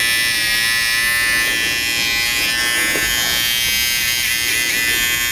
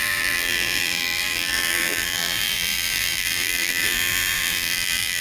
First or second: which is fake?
second